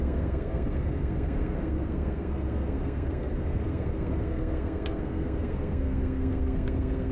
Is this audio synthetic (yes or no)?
yes